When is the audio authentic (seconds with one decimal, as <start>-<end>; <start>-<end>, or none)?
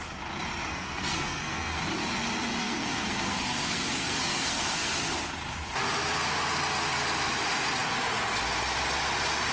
0.0-0.7; 1.8-2.6; 4.9-9.5